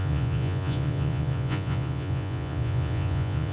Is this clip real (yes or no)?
no